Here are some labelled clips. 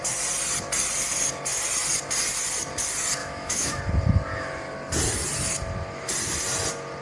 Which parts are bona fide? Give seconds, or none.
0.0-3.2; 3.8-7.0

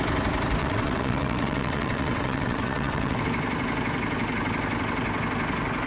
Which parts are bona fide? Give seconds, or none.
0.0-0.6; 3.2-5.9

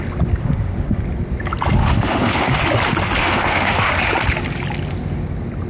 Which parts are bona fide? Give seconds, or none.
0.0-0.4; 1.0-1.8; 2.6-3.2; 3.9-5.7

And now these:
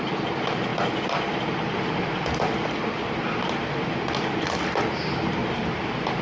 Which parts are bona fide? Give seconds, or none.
0.0-5.4

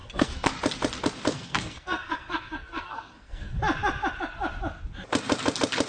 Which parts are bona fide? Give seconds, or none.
0.5-1.3; 3.6-5.9

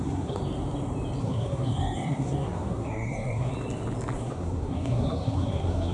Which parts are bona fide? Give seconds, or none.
0.4-1.2; 3.5-4.2

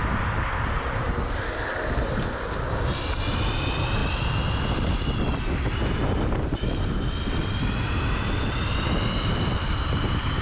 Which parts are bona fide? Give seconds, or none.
0.0-2.8

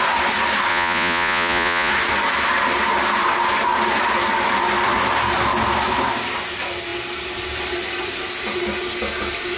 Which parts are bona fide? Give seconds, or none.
0.0-0.7; 1.9-9.6